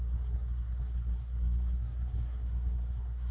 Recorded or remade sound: remade